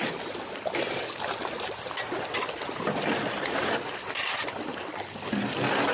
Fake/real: real